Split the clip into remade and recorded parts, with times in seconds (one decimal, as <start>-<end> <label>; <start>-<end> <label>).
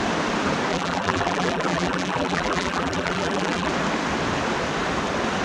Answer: 0.0-0.7 recorded; 0.7-3.7 remade; 3.7-5.4 recorded